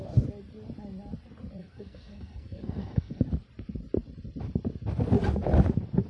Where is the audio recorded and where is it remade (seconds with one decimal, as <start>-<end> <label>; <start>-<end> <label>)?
0.0-1.6 recorded; 1.6-3.2 remade; 3.2-6.1 recorded